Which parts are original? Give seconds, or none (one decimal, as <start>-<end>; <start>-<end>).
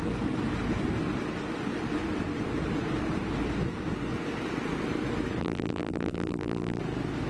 0.0-5.4; 6.8-7.3